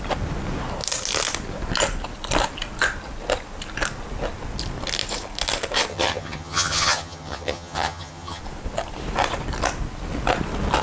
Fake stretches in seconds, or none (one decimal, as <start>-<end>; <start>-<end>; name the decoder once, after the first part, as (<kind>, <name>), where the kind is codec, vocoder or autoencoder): 5.9-8.4 (vocoder, HiFi-GAN)

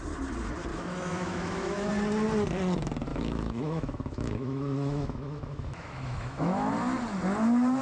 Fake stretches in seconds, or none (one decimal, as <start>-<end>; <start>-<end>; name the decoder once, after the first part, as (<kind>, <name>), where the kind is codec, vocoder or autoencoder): 0.7-1.9 (autoencoder, DAC-VAE); 3.1-6.7

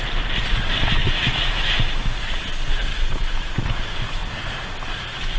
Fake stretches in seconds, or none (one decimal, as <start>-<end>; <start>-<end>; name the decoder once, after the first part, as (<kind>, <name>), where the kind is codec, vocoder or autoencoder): 1.0-2.2 (autoencoder, DAC-VAE); 2.9-3.5

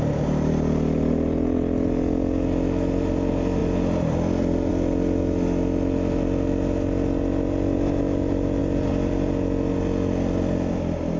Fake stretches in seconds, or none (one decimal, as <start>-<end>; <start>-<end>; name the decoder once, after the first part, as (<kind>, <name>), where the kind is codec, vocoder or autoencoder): none